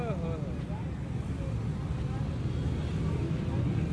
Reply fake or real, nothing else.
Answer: real